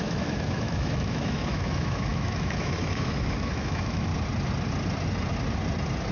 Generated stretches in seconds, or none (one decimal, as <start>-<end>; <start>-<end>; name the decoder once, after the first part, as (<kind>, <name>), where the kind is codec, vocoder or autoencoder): 0.0-4.1 (autoencoder, DAC-VAE)